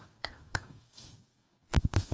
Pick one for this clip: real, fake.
fake